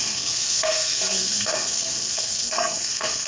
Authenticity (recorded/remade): remade